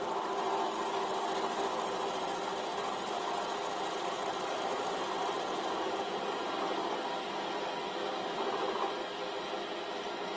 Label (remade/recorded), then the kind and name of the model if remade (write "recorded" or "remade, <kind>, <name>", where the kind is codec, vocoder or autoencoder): recorded